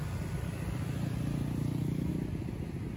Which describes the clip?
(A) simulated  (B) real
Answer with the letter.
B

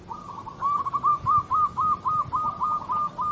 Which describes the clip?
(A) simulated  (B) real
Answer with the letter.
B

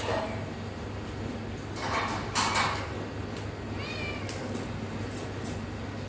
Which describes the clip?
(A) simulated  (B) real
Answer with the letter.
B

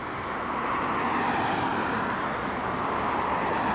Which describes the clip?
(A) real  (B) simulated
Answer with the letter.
A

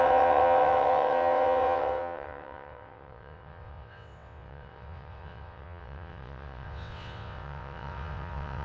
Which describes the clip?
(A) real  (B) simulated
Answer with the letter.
B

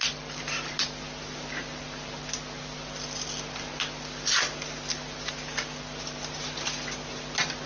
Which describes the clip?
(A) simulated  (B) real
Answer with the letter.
B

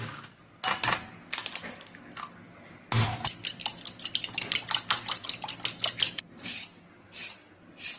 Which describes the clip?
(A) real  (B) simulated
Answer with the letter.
A